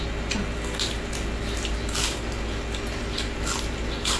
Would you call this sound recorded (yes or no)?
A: yes